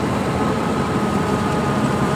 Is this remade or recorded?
remade